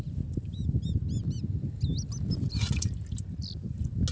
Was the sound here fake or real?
real